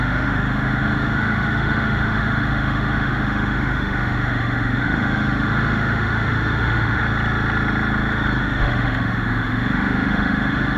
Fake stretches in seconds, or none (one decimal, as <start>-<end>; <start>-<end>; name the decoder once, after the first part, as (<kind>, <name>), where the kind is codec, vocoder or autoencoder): 0.0-7.0 (autoencoder, DAC-VAE); 8.4-10.8